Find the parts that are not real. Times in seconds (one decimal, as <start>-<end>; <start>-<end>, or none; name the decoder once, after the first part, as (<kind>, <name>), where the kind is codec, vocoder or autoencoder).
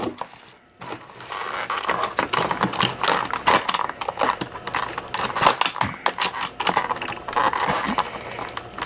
none